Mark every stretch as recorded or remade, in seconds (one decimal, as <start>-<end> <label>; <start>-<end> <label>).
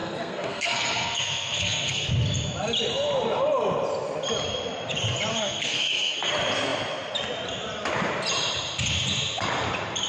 0.0-2.1 remade; 2.1-5.3 recorded; 5.3-6.3 remade; 6.3-10.1 recorded